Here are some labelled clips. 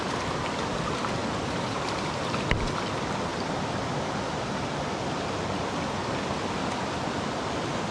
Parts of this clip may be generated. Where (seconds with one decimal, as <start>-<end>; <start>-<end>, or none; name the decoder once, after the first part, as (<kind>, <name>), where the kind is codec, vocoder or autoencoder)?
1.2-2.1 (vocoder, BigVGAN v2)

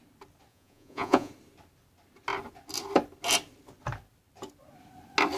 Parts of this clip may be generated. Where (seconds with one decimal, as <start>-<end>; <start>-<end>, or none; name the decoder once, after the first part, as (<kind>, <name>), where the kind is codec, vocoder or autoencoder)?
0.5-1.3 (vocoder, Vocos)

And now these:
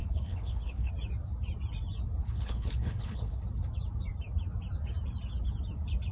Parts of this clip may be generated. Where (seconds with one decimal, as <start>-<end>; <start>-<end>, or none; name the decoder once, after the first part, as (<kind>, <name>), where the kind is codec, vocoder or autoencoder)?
0.0-0.9 (codec, HILCodec); 2.2-3.4